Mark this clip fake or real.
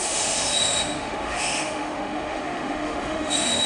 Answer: fake